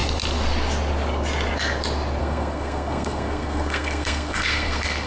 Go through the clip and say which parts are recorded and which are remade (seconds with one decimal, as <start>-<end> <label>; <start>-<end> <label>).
0.0-2.2 recorded; 2.2-5.1 remade